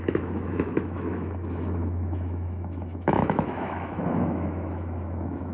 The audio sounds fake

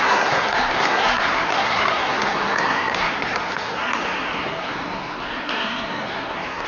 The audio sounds fake